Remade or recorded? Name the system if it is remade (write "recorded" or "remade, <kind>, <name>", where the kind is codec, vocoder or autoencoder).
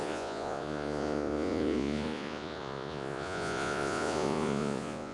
remade, vocoder, Vocos